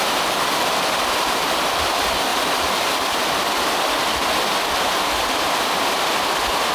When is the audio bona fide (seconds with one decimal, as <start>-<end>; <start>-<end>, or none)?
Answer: 0.0-2.3; 2.8-6.7